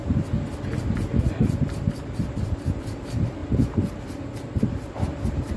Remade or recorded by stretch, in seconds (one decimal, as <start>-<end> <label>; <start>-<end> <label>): 0.0-3.4 recorded; 3.4-4.2 remade; 4.2-5.6 recorded